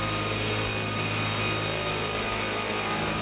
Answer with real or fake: real